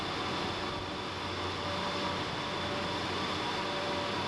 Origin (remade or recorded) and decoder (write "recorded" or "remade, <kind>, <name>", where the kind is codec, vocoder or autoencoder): recorded